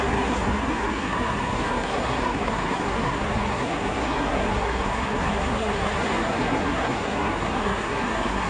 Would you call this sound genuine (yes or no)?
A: no